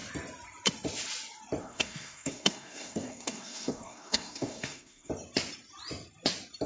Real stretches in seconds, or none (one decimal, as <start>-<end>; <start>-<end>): 0.0-1.6; 5.1-6.7